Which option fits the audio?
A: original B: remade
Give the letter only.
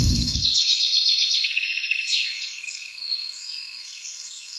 B